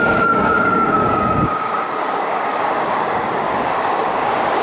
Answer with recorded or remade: remade